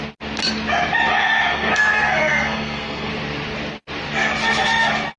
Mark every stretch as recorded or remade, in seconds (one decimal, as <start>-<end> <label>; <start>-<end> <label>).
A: 0.0-1.5 recorded; 1.5-3.1 remade; 3.1-5.2 recorded